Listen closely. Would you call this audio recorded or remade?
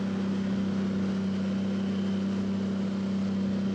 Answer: recorded